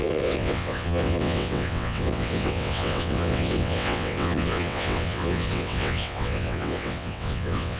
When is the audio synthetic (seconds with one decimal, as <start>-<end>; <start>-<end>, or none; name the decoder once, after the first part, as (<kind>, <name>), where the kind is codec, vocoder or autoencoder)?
0.0-7.8 (vocoder, WaveNeXt)